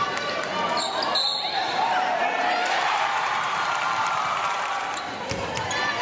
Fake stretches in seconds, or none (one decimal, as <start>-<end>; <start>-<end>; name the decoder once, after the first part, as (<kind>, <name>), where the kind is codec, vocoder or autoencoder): 1.6-5.1 (vocoder, BigVGAN v2)